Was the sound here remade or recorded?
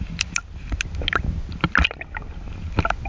recorded